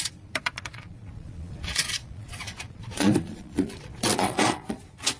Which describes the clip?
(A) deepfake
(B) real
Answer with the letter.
A